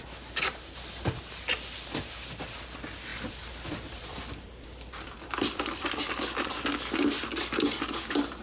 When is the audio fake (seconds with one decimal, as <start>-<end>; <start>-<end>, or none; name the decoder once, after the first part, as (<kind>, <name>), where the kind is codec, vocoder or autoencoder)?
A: 3.1-6.0 (vocoder, BigVGAN v2)